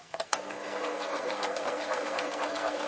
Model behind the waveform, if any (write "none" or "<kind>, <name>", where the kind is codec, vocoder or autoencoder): codec, SNAC